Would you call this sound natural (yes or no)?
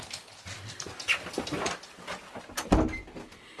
yes